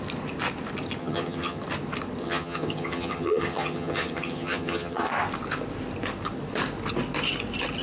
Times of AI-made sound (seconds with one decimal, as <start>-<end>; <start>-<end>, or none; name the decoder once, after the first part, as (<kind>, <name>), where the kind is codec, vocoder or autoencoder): 1.0-1.6 (vocoder, HiFi-GAN); 2.2-5.1